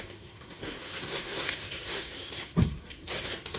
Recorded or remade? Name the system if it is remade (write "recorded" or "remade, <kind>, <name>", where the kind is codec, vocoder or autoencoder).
remade, codec, SNAC